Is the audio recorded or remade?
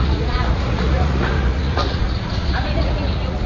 remade